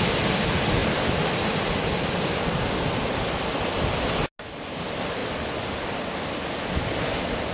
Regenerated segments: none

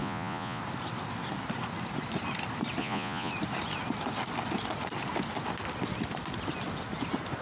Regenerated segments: 0.0-0.6 (vocoder, Vocos); 2.8-3.3